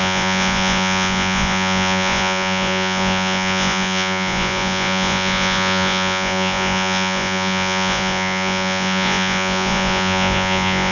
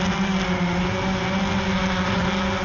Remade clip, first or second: first